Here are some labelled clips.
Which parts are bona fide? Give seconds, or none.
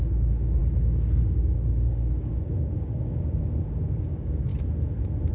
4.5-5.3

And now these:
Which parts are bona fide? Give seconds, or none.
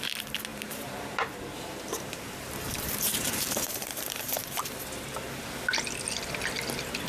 0.0-0.5; 4.8-7.1